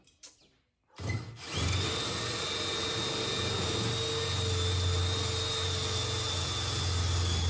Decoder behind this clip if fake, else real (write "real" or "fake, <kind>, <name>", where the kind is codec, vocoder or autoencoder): real